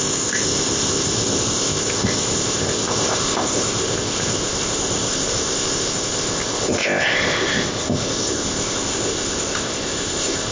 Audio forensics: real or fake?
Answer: fake